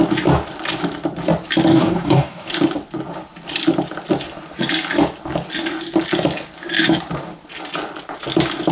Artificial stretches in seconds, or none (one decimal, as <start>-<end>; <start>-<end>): 1.7-2.5